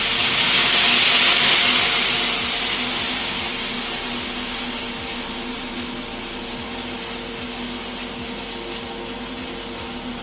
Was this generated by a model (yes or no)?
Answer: no